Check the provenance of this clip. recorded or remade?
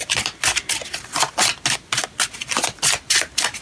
recorded